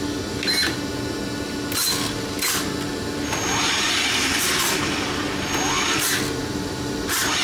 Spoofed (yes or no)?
no